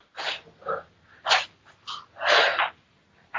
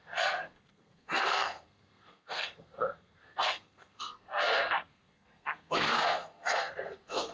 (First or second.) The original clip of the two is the first